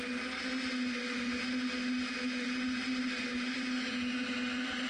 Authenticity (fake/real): real